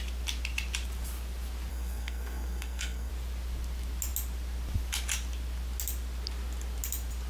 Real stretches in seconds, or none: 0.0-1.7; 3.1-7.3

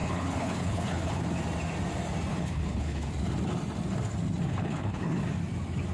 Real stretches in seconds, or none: 1.2-2.3; 3.1-4.5; 5.2-5.9

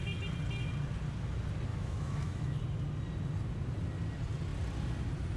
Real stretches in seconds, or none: 0.0-1.7; 2.6-5.4

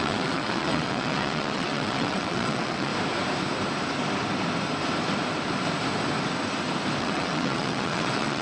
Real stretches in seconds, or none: 2.9-7.0

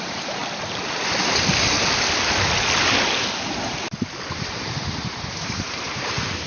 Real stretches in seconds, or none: 0.4-4.3

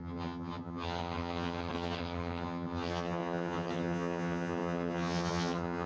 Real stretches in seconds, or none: none

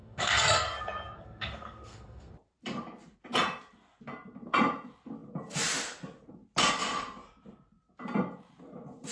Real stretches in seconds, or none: 2.3-9.1